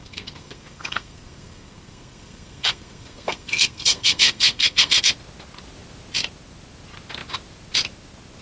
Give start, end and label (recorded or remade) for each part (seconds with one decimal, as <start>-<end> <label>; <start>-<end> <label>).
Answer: 0.0-5.0 remade; 5.0-8.4 recorded